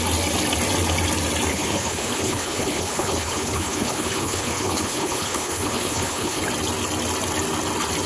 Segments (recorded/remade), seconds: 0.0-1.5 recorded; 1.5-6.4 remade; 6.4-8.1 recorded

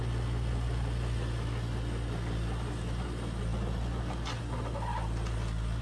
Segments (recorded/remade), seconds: 0.0-5.8 recorded

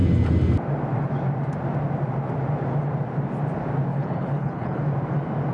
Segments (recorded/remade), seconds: 0.0-3.9 recorded; 3.9-4.8 remade; 4.8-5.5 recorded

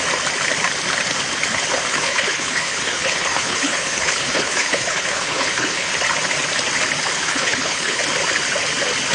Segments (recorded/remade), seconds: 0.0-1.9 recorded; 1.9-5.9 remade; 5.9-7.2 recorded; 7.2-8.0 remade; 8.0-9.1 recorded

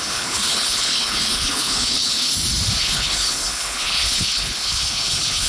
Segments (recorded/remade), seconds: 0.0-2.3 remade; 2.3-2.8 recorded; 2.8-5.5 remade